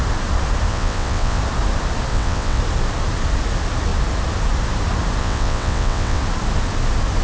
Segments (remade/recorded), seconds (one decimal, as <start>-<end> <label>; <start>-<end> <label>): 0.0-0.7 recorded; 0.7-1.4 remade; 1.4-2.1 recorded; 2.1-2.6 remade; 2.6-5.2 recorded; 5.2-6.2 remade; 6.2-7.2 recorded